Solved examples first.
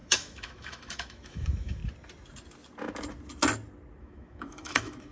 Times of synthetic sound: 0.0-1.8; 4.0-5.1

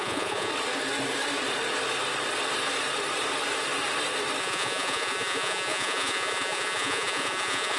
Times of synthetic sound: 0.0-0.5; 4.4-7.8

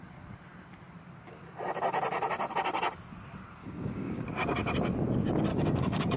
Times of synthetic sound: 3.6-4.2; 5.5-6.2

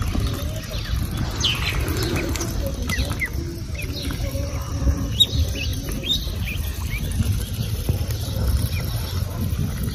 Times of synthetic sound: none

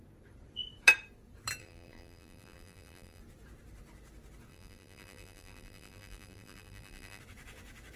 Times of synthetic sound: 1.6-3.2; 4.5-7.2